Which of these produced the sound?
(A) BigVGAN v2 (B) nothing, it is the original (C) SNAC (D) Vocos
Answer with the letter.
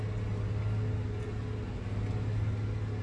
B